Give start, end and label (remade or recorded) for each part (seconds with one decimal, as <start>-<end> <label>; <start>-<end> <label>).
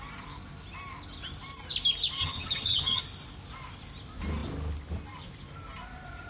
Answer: 0.0-2.2 recorded; 2.2-3.0 remade; 3.0-6.3 recorded